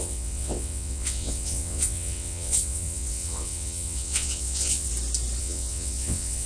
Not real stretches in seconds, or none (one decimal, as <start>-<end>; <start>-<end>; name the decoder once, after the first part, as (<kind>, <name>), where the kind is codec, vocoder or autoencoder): 0.0-4.9 (vocoder, WaveNeXt); 5.4-6.5